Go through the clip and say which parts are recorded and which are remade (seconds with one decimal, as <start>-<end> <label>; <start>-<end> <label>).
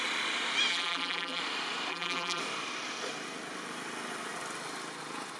0.0-0.7 recorded; 0.7-1.4 remade; 1.4-1.9 recorded; 1.9-2.4 remade; 2.4-5.4 recorded